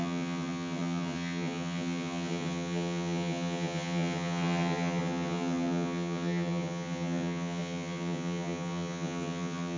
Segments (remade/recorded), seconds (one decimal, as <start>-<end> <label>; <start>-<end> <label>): 0.0-9.8 remade